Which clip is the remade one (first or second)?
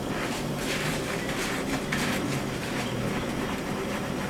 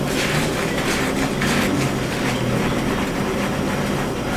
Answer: first